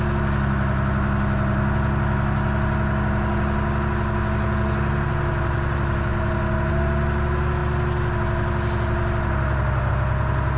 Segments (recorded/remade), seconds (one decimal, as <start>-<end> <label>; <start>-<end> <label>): 0.0-10.6 recorded